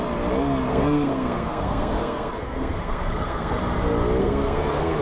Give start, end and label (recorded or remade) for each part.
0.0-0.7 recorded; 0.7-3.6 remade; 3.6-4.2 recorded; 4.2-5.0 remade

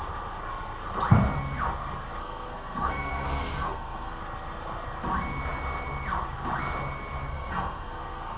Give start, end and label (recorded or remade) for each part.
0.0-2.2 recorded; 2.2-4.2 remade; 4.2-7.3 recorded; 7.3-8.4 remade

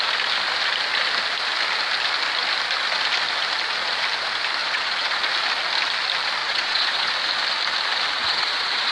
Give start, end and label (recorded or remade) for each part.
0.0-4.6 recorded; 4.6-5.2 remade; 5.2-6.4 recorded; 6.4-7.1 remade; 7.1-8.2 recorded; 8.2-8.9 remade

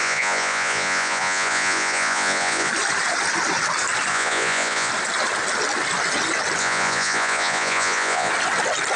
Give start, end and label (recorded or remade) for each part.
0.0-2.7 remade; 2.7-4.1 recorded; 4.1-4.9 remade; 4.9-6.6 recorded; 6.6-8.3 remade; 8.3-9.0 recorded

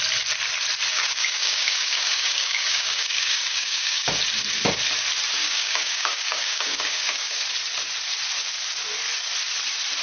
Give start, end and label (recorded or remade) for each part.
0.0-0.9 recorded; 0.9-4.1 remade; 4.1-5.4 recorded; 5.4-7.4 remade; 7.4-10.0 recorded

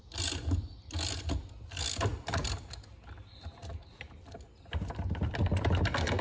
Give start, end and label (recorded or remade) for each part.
0.0-6.2 recorded

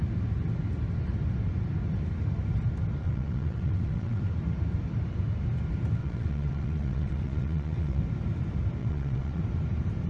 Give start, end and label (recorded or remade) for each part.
0.0-3.0 recorded; 3.0-4.2 remade; 4.2-6.0 recorded; 6.0-8.0 remade; 8.0-8.8 recorded; 8.8-9.4 remade; 9.4-10.1 recorded